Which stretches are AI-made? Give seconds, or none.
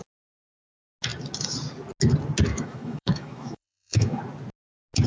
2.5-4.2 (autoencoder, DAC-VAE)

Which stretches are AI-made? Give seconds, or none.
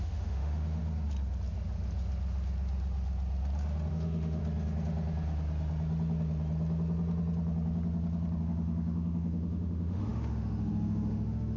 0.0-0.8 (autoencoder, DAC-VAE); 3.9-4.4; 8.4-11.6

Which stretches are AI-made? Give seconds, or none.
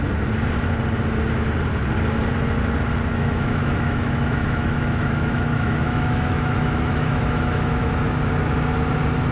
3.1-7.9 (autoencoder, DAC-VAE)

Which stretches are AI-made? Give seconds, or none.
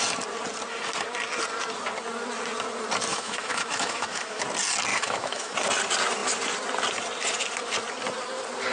3.1-4.4 (autoencoder, DAC-VAE); 4.9-5.5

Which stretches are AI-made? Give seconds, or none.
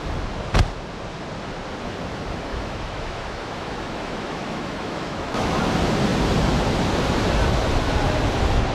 2.5-5.6 (autoencoder, DAC-VAE)